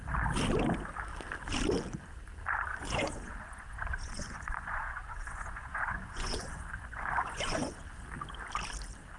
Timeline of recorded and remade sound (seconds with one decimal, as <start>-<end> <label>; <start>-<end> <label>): 0.0-2.7 recorded; 2.7-7.7 remade; 7.7-9.2 recorded